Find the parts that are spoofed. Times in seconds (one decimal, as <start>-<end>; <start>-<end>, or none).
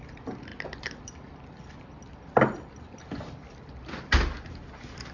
none